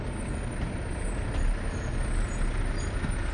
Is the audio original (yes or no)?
yes